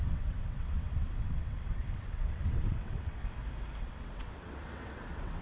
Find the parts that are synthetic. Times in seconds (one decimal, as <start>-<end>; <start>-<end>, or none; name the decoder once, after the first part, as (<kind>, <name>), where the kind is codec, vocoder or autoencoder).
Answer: 0.0-3.2 (vocoder, WaveNeXt); 3.8-5.4